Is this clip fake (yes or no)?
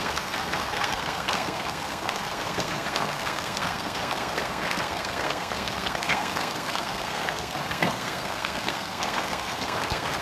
yes